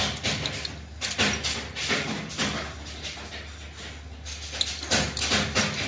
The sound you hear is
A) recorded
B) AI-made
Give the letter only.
A